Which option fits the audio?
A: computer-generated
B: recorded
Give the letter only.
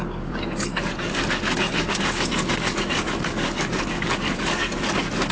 A